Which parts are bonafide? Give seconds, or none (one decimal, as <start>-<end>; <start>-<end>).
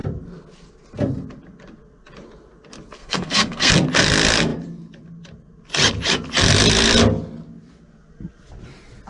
0.0-3.0; 3.7-9.1